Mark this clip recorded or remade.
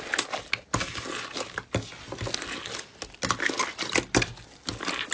recorded